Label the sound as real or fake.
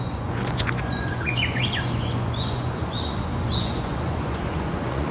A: fake